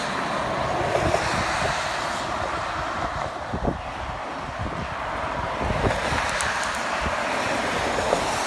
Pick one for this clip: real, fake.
real